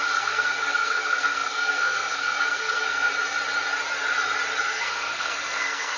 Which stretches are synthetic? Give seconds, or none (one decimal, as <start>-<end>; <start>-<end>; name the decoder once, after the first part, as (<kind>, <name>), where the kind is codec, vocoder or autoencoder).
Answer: 0.0-3.1 (codec, SNAC); 4.6-6.0

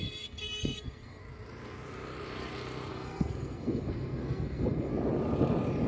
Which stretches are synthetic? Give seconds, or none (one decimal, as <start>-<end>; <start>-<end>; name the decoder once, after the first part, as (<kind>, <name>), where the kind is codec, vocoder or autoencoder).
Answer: 0.0-1.2 (codec, SNAC); 2.9-4.9

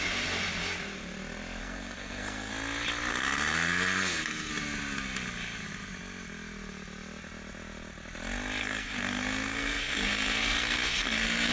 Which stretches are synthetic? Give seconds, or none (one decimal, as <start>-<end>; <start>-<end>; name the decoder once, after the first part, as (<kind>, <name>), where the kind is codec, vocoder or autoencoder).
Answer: 1.6-2.5 (codec, SNAC); 3.1-4.5; 8.6-11.5

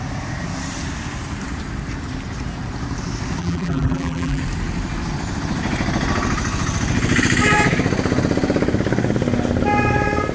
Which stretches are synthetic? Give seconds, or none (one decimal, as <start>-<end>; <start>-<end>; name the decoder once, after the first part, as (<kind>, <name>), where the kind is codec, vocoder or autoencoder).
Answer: 3.4-4.4 (vocoder, BigVGAN v2)

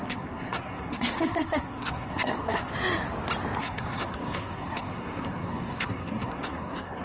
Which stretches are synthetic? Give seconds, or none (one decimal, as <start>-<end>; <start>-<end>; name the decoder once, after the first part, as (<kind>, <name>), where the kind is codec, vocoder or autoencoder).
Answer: 0.0-2.7 (codec, SNAC); 3.6-7.0